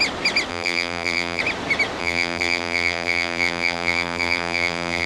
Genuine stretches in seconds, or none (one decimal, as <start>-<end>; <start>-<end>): 0.0-0.5; 1.4-2.0